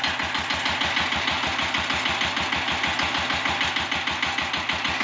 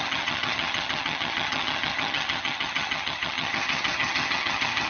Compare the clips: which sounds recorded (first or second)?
first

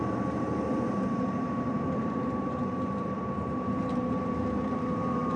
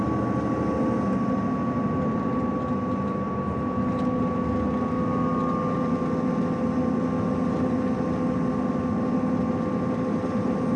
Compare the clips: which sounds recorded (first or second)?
second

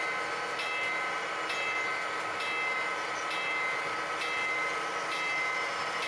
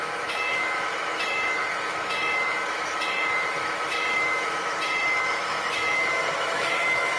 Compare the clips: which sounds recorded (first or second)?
first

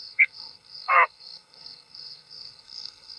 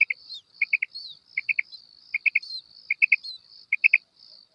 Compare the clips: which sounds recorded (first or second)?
second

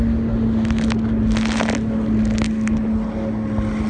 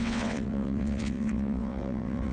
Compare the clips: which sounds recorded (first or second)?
first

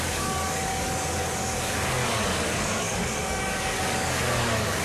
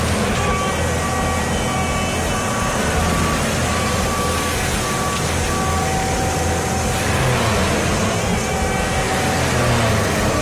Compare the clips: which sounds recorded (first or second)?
second